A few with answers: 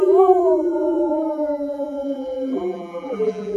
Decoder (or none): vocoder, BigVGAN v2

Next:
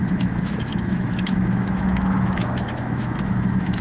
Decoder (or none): autoencoder, DAC-VAE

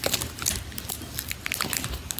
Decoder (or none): none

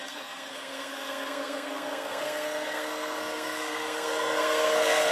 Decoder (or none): codec, SNAC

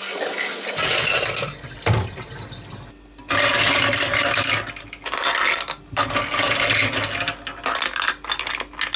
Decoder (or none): none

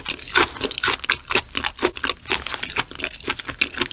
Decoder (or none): none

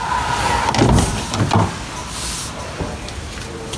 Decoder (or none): none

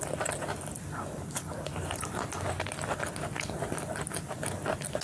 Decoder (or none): none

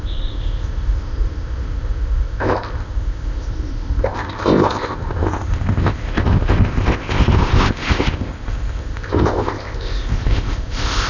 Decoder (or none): codec, ZipCodec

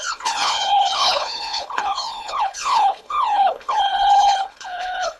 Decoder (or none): codec, HILCodec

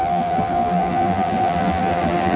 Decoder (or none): vocoder, BigVGAN v2